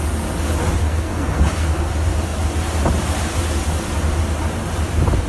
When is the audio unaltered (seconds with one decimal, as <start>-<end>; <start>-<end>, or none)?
0.0-0.8; 1.9-5.3